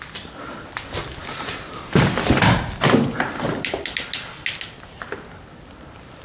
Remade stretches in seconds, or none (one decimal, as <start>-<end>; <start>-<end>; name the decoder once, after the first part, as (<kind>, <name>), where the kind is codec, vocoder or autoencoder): none